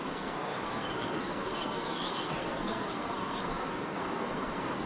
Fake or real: fake